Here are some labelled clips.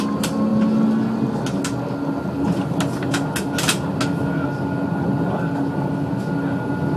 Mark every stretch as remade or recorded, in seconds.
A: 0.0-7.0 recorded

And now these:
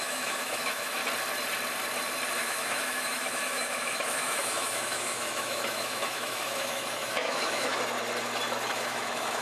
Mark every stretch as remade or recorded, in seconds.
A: 0.0-1.0 remade; 1.0-2.4 recorded; 2.4-7.7 remade; 7.7-8.7 recorded; 8.7-9.4 remade